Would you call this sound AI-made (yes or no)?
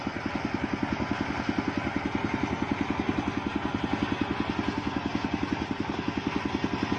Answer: no